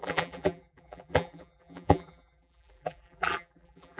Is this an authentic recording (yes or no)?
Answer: no